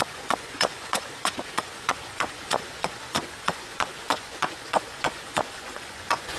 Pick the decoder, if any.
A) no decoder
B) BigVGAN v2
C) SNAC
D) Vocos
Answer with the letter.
D